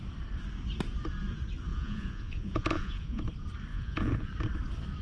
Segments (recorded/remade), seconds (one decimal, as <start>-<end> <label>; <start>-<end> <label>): 0.0-1.7 recorded; 1.7-3.2 remade; 3.2-3.7 recorded; 3.7-4.3 remade; 4.3-5.0 recorded